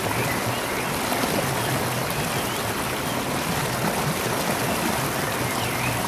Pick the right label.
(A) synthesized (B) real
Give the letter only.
B